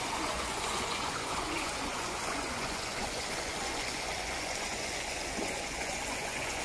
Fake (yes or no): yes